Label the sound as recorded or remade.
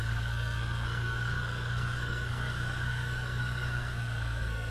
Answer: remade